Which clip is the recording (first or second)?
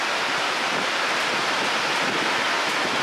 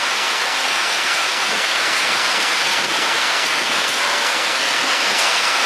first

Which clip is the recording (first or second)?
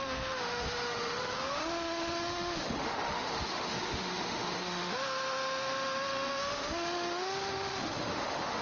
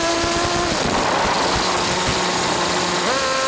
second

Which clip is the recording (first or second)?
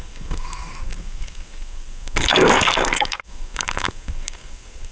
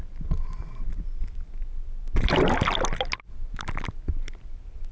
second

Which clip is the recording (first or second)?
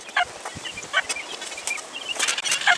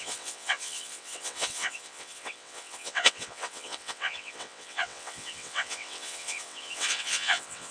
first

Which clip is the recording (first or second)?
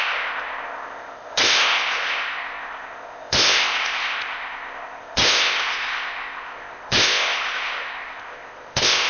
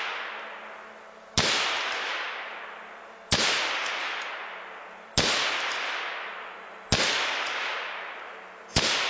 second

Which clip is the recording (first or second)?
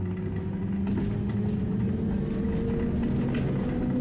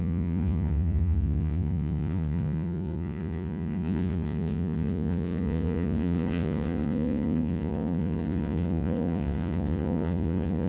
first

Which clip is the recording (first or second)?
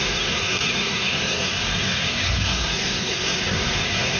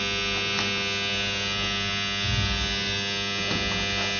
second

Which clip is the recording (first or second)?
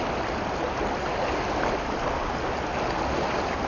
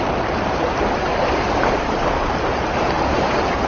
first